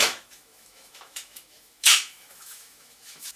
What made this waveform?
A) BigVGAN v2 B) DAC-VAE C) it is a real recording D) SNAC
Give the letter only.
B